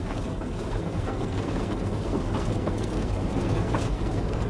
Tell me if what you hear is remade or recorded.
remade